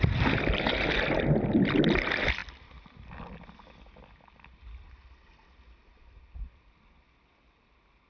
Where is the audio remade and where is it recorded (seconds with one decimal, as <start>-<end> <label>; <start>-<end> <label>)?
0.0-8.1 recorded